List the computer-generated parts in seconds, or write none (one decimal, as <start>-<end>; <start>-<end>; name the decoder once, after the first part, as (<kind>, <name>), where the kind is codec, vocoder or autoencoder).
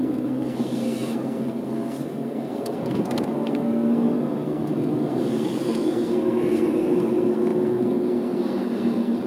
0.0-9.3 (codec, SNAC)